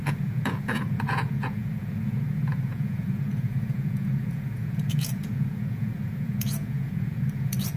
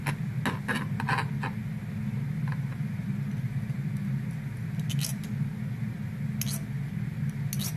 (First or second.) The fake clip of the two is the first